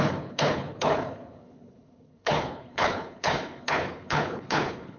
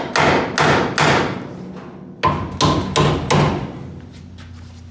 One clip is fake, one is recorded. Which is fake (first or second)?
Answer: first